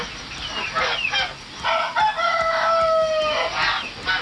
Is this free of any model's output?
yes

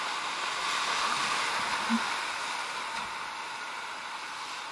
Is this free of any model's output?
yes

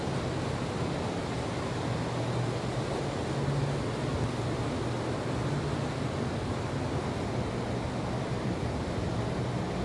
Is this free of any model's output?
yes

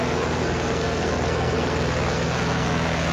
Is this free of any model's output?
no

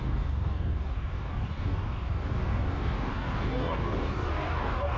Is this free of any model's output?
no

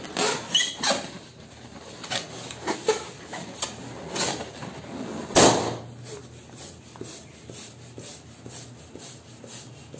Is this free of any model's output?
yes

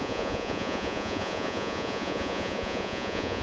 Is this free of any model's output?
no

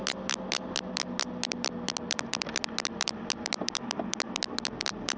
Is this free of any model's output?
yes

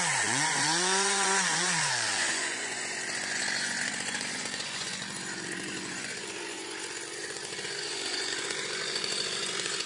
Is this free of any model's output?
no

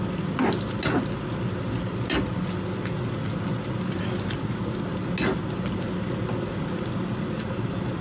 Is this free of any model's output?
yes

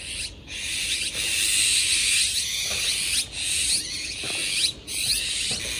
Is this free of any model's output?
yes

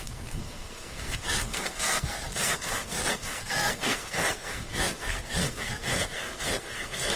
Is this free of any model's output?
no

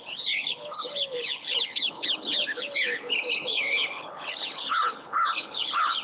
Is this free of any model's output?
no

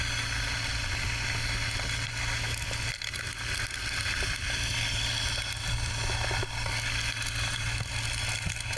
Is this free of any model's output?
yes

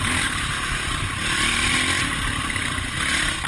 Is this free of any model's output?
yes